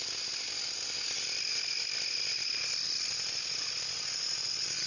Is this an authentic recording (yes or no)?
yes